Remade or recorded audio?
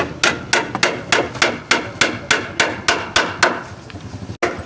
recorded